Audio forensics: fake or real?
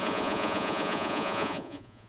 fake